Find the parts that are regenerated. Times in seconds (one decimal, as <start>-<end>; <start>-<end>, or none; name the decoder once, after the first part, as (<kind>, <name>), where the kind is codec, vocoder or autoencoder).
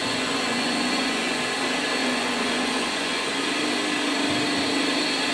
0.0-1.4 (vocoder, Vocos); 2.0-3.4